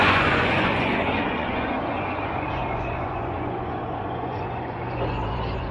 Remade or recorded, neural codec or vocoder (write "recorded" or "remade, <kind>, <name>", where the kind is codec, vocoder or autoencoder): remade, vocoder, Vocos